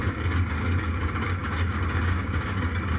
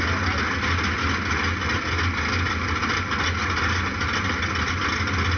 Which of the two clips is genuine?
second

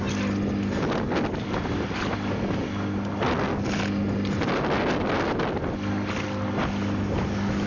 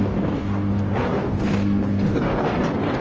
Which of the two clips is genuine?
first